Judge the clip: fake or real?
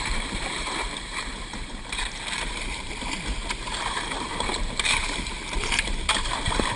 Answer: fake